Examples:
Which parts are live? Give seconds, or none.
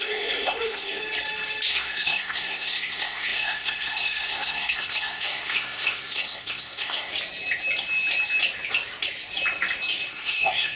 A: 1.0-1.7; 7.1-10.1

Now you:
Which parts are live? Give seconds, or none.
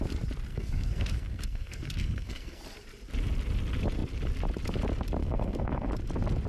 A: 0.0-0.5; 2.6-5.2; 5.9-6.5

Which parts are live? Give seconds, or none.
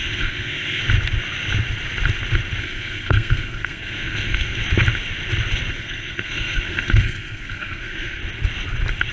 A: 0.8-2.6; 4.6-5.7; 8.2-9.1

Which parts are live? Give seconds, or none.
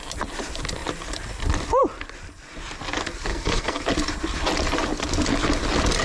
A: 0.0-3.3; 3.8-6.0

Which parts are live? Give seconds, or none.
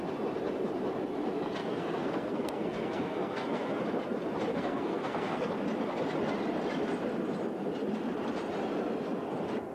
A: 0.0-1.6; 3.8-4.5; 5.5-9.7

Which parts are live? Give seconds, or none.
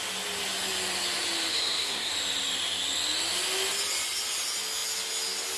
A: 0.0-1.5; 2.1-5.6